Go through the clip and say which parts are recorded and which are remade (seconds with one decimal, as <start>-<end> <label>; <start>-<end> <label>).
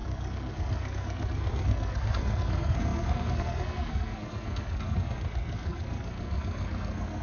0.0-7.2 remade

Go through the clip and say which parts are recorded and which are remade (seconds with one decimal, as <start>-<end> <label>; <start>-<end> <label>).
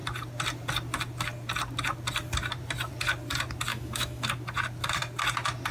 0.0-3.7 recorded; 3.7-4.3 remade; 4.3-5.7 recorded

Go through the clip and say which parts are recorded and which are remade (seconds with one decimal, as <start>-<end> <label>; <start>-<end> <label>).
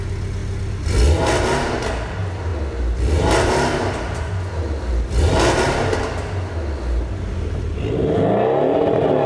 0.0-9.3 recorded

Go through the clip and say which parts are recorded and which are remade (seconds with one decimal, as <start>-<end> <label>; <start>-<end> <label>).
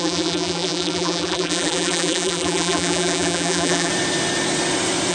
0.0-3.9 remade; 3.9-5.1 recorded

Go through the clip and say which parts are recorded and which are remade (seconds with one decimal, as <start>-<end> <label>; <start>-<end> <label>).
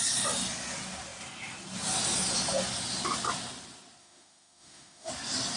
0.0-4.0 recorded; 4.0-5.1 remade; 5.1-5.6 recorded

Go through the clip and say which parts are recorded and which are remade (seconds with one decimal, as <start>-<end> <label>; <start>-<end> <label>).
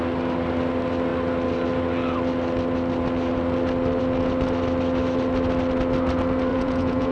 0.0-6.5 recorded; 6.5-7.1 remade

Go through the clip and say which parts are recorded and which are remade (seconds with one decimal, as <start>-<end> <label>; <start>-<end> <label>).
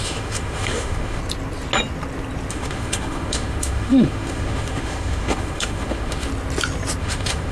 0.0-1.2 remade; 1.2-2.5 recorded; 2.5-6.3 remade; 6.3-7.0 recorded; 7.0-7.5 remade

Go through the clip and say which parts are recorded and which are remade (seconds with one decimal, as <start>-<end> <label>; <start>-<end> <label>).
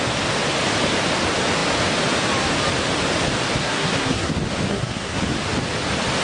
0.0-3.6 recorded; 3.6-4.3 remade; 4.3-4.7 recorded; 4.7-5.2 remade; 5.2-6.2 recorded